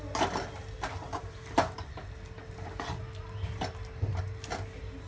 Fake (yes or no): no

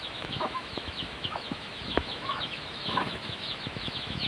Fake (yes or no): yes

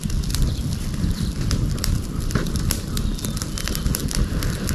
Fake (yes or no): no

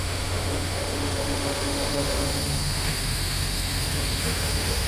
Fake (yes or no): yes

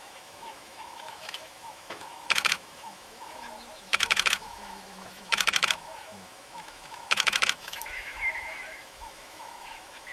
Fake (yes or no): yes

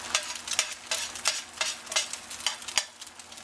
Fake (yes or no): no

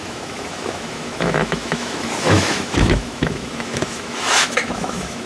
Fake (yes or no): yes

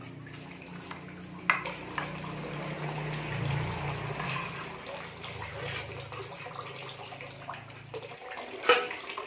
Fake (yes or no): no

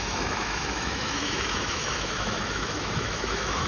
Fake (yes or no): yes